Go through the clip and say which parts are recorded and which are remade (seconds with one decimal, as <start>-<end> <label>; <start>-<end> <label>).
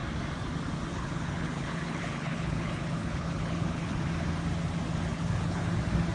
0.0-0.9 recorded; 0.9-4.0 remade; 4.0-5.1 recorded; 5.1-5.6 remade; 5.6-6.1 recorded